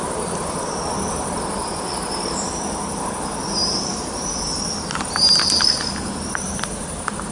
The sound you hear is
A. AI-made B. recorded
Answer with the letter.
B